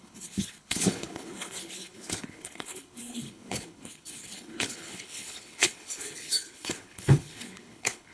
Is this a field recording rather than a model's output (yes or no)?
no